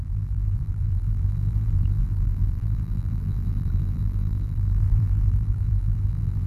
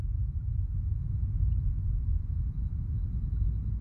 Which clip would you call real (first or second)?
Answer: second